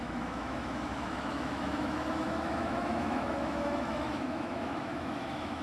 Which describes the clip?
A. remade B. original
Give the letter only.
A